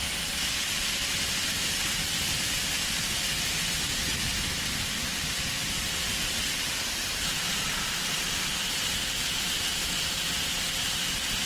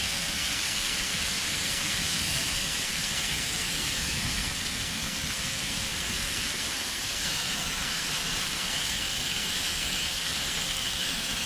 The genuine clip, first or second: first